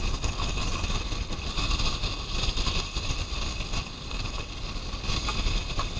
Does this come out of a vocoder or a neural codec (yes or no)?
no